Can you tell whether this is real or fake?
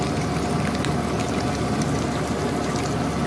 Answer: real